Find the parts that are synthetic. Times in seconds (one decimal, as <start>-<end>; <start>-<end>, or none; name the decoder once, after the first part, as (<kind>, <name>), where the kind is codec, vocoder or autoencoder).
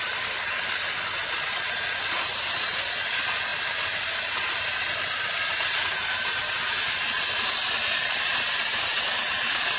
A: none